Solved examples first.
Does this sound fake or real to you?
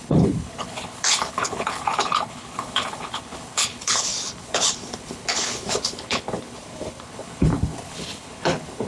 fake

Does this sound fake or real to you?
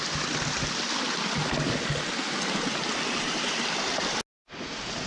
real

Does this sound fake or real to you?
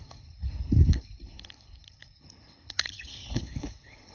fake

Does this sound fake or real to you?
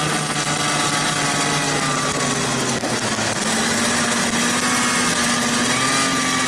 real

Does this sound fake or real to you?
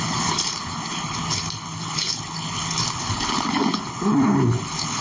fake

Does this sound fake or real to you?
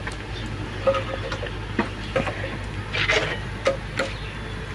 real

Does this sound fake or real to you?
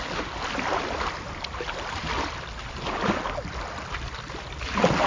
real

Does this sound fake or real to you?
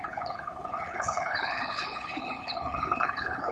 fake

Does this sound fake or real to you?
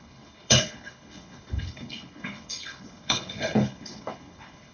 fake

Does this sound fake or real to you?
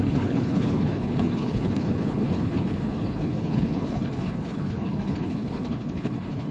fake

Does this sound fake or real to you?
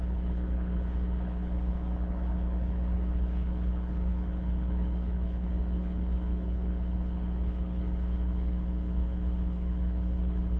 fake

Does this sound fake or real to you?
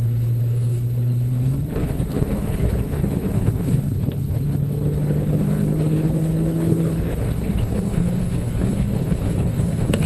fake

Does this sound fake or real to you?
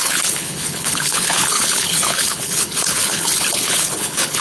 fake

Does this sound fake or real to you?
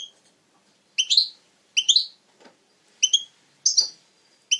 real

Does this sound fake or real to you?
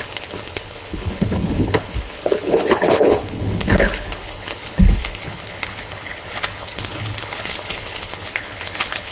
fake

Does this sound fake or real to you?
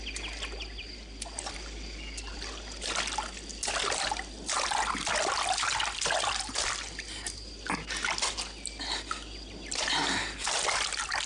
real